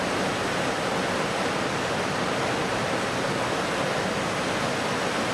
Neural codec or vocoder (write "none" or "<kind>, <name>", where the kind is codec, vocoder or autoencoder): none